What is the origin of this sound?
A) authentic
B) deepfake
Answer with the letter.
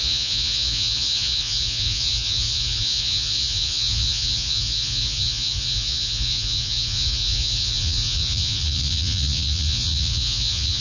B